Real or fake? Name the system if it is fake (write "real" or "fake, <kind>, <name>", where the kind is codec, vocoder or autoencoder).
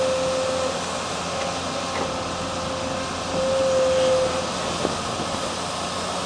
real